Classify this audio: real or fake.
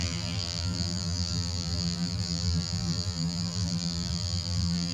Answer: fake